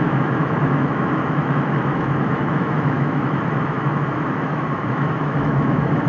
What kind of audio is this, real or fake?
fake